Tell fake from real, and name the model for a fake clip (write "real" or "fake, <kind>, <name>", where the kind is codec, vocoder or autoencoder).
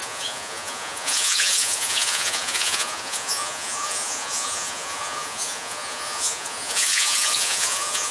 fake, vocoder, Vocos